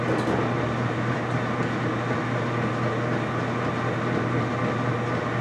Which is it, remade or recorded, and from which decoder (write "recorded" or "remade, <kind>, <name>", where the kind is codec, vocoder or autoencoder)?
recorded